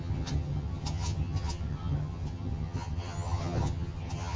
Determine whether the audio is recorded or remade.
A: remade